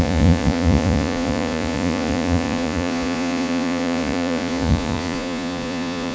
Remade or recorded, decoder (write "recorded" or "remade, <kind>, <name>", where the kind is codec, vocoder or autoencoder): remade, vocoder, Vocos